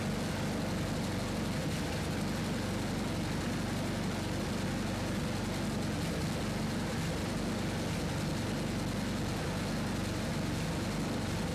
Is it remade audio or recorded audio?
recorded